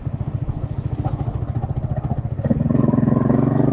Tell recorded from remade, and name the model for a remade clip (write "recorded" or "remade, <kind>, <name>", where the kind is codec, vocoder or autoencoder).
recorded